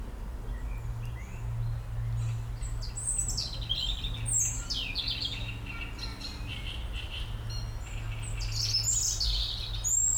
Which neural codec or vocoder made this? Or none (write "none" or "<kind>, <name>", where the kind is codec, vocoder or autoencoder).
none